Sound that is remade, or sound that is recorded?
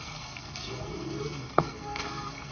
remade